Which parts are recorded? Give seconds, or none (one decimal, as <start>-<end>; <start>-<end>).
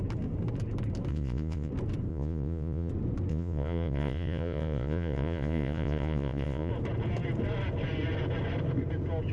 0.0-1.1; 1.7-2.1; 2.9-3.3; 6.7-9.3